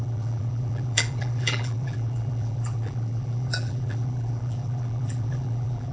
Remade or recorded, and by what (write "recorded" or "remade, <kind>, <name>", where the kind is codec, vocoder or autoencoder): remade, vocoder, BigVGAN v2